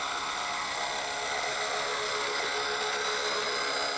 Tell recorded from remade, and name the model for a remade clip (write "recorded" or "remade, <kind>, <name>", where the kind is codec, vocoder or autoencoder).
recorded